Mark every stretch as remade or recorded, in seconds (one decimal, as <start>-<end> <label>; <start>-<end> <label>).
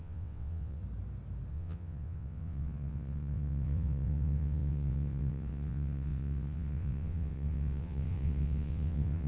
0.0-0.8 remade; 0.8-1.5 recorded; 1.5-9.3 remade